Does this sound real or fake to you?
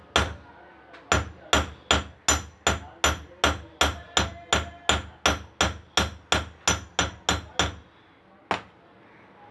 real